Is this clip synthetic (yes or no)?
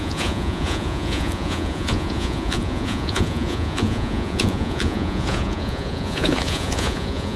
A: yes